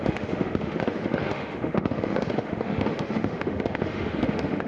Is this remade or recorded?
remade